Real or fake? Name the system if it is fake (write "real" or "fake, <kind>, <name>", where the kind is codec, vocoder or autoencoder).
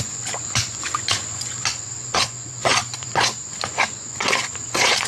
fake, vocoder, Vocos